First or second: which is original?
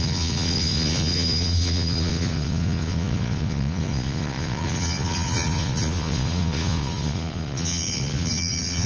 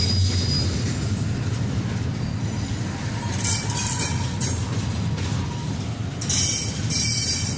second